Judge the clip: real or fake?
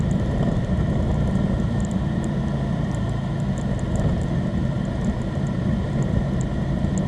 fake